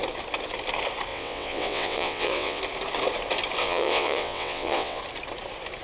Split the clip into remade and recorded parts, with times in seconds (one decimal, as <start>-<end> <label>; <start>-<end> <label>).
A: 0.0-1.1 recorded; 1.1-2.6 remade; 2.6-3.6 recorded; 3.6-5.0 remade; 5.0-5.8 recorded